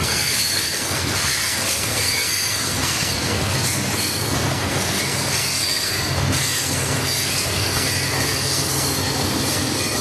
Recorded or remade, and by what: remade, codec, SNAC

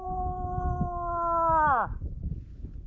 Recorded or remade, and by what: recorded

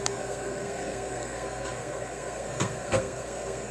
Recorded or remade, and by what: remade, codec, SNAC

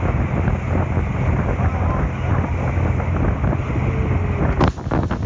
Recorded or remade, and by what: recorded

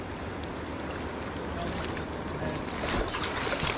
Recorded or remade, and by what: recorded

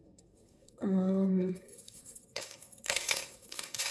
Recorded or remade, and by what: remade, codec, SNAC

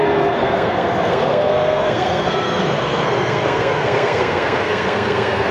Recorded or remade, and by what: remade, codec, SNAC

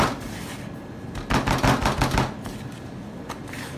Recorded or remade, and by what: recorded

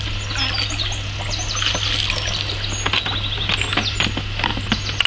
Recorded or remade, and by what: recorded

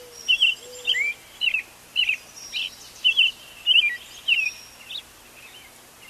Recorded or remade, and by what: recorded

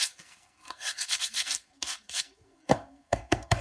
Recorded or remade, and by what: remade, codec, SNAC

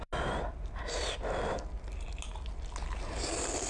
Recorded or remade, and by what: recorded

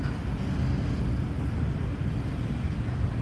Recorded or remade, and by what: recorded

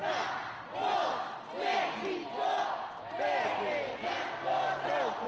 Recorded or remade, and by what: recorded